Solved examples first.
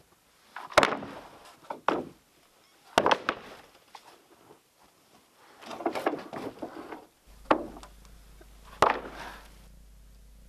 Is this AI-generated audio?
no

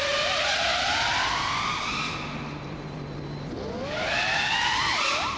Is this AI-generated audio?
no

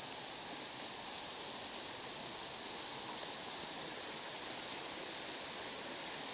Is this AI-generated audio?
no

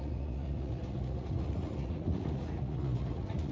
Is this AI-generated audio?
yes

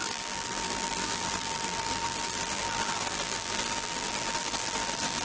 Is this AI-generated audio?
yes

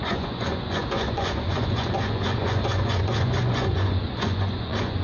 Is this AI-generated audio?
yes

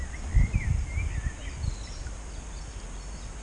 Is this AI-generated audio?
no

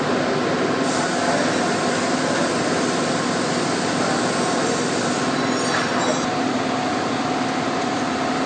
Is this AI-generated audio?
no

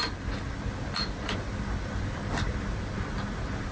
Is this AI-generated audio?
no